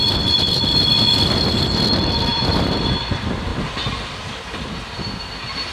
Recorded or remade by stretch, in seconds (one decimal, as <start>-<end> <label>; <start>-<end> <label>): 0.0-2.3 recorded; 2.3-3.0 remade; 3.0-5.7 recorded